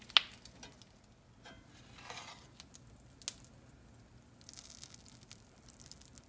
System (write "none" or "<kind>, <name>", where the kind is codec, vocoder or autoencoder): none